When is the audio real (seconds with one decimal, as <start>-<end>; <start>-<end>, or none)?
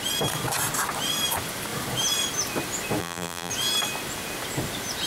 0.0-3.0; 3.5-5.1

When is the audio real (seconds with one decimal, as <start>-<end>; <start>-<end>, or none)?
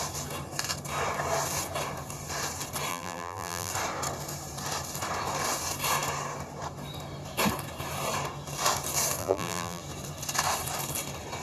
0.0-2.9; 3.7-9.2; 9.8-11.4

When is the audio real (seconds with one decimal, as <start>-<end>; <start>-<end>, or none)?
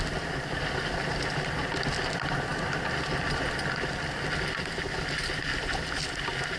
0.0-6.6